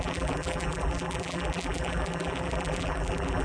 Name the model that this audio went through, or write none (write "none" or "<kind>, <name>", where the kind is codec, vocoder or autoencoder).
vocoder, BigVGAN v2